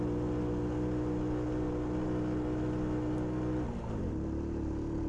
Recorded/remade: recorded